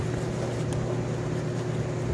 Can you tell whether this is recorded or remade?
recorded